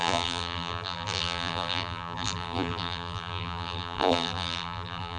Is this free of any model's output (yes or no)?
no